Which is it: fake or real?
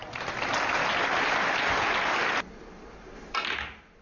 real